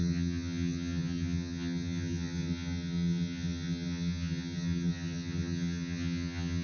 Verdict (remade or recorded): remade